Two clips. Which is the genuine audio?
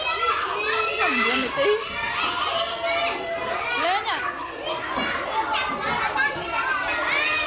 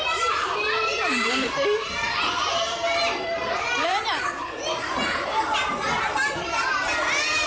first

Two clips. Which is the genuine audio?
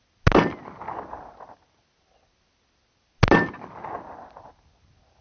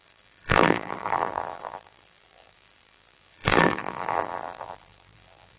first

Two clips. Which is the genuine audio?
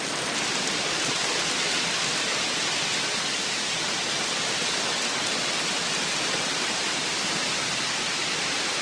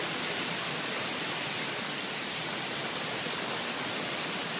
first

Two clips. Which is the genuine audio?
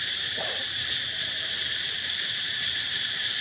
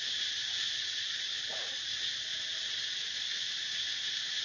second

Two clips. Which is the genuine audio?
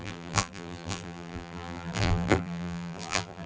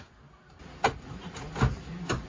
second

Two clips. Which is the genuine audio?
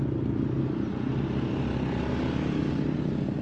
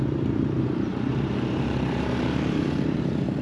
first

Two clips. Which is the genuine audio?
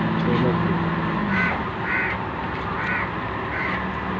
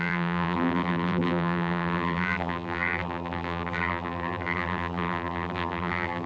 first